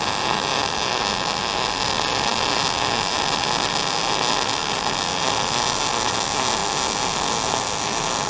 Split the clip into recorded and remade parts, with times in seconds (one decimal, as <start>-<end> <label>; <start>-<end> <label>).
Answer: 0.0-8.3 recorded